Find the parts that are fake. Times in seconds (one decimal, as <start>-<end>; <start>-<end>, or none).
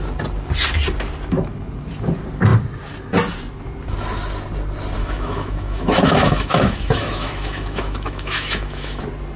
5.0-9.0